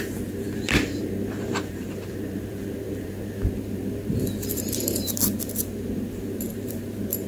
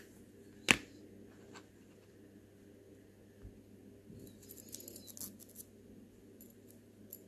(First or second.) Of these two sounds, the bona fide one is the second